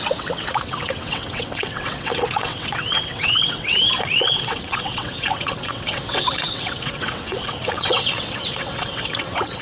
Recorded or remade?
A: remade